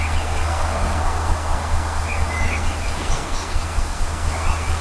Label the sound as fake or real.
fake